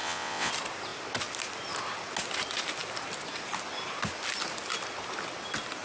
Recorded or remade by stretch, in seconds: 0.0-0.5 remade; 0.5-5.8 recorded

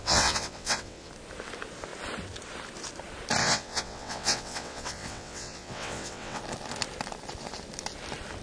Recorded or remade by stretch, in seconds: 0.0-1.1 remade; 1.1-3.4 recorded; 3.4-6.4 remade; 6.4-8.4 recorded

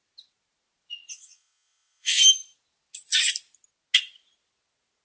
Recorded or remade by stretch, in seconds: 0.0-1.1 recorded; 1.1-2.2 remade; 2.2-5.0 recorded